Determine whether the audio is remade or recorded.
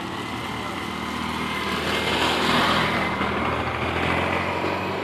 recorded